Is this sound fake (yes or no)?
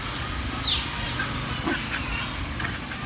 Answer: no